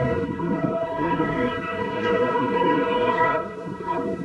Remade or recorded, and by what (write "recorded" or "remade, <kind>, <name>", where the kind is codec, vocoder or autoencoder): remade, codec, SNAC